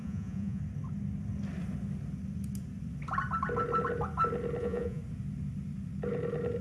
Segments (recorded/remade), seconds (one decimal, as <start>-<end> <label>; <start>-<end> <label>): 0.0-0.6 remade; 0.6-4.6 recorded; 4.6-5.0 remade; 5.0-6.6 recorded